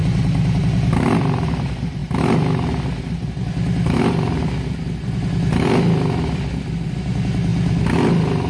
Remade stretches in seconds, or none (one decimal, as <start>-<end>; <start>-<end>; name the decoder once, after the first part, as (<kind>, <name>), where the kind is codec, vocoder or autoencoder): none

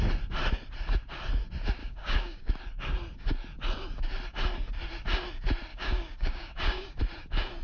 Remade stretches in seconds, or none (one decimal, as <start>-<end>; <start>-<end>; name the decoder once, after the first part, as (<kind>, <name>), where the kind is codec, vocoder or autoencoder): 1.8-2.5 (codec, DAC); 5.7-7.0

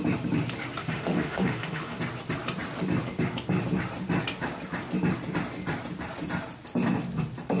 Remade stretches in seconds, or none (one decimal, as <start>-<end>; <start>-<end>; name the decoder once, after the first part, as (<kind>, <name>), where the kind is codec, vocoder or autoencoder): 0.8-2.0 (autoencoder, DAC-VAE)

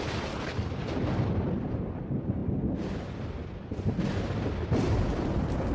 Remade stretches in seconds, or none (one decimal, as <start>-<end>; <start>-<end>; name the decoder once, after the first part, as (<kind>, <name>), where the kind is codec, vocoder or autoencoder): none

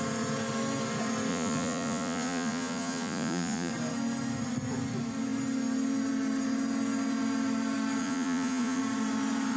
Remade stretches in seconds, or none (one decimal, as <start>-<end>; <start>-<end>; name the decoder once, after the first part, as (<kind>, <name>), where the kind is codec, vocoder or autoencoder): 1.3-3.7 (vocoder, Vocos); 8.0-8.8

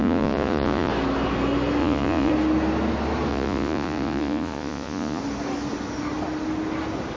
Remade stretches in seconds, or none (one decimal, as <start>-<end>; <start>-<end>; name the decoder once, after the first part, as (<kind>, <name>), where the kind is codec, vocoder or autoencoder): 0.0-0.9 (vocoder, Vocos); 1.8-2.3; 3.3-5.2